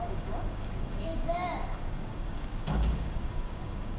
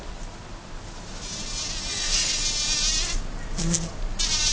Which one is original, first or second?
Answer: second